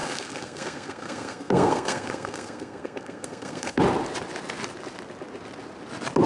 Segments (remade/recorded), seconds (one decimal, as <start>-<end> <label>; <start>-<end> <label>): 0.0-3.8 remade; 3.8-6.3 recorded

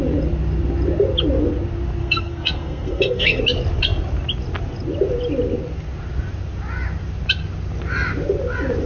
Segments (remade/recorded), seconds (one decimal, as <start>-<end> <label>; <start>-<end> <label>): 0.0-2.0 recorded; 2.0-3.4 remade; 3.4-8.9 recorded

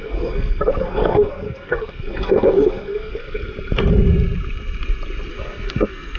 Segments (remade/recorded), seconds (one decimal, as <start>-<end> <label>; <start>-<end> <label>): 0.0-3.4 remade; 3.4-5.3 recorded; 5.3-6.2 remade